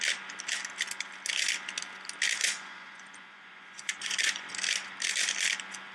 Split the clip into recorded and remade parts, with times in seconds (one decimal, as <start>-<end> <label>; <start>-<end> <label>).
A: 0.0-2.4 recorded; 2.4-4.5 remade; 4.5-5.9 recorded